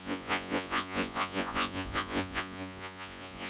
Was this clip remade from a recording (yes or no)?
yes